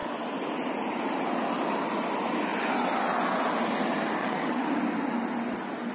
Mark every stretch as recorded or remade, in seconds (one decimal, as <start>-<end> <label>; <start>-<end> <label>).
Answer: 0.0-4.2 recorded; 4.2-4.7 remade; 4.7-5.9 recorded